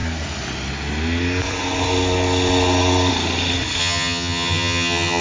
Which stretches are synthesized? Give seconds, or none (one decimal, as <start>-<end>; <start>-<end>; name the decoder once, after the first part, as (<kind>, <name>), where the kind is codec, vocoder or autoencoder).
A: 3.8-5.2 (vocoder, HiFi-GAN)